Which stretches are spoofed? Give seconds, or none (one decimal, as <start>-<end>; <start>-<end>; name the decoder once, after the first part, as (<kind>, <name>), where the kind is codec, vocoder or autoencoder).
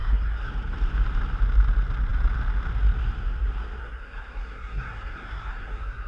0.0-0.5 (codec, SNAC); 3.8-6.1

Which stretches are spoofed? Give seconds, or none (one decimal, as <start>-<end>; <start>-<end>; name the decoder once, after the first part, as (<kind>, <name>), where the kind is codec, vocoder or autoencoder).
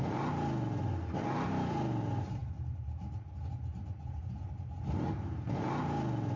none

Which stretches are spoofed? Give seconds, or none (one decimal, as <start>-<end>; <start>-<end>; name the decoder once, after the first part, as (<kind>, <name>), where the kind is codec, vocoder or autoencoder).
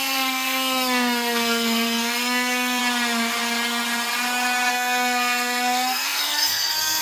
0.0-2.8 (codec, SNAC); 4.7-7.0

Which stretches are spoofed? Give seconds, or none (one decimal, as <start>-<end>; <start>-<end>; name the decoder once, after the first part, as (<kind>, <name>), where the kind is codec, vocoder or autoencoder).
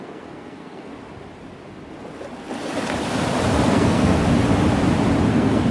0.0-0.9 (codec, SNAC); 3.7-4.2; 5.3-5.7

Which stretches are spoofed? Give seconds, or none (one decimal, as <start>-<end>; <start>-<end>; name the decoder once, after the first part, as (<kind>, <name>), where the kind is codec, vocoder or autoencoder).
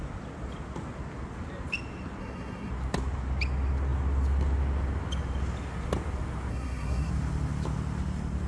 2.2-2.7 (codec, SNAC); 6.5-7.1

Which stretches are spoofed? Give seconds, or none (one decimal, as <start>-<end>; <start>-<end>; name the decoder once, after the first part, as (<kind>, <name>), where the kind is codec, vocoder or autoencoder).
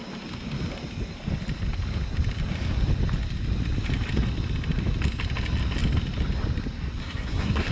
7.0-7.7 (codec, SNAC)